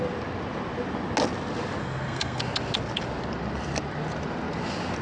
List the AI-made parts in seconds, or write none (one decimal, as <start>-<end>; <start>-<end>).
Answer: 1.8-2.4